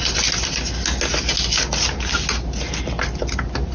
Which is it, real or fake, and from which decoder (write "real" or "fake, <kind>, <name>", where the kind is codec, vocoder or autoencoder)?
real